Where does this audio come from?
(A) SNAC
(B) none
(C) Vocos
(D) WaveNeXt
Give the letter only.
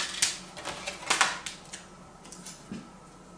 B